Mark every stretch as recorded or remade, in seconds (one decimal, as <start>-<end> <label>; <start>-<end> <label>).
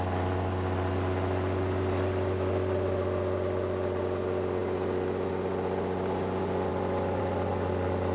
0.0-8.1 recorded